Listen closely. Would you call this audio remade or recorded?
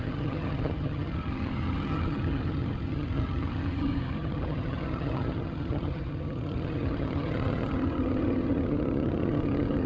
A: remade